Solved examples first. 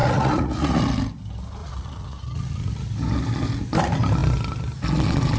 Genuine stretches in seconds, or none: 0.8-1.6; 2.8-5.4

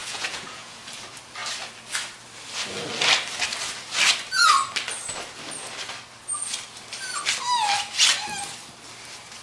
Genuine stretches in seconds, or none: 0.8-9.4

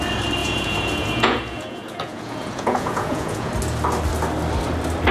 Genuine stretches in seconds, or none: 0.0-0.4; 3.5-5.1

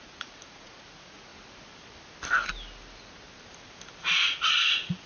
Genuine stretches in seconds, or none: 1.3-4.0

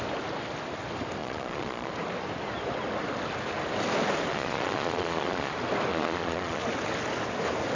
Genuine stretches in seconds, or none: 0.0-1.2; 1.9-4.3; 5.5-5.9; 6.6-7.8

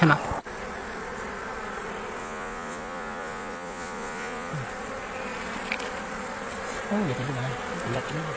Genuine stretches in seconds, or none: 0.0-2.2; 4.5-8.4

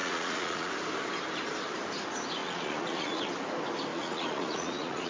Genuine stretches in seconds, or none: 0.7-2.4; 3.3-3.9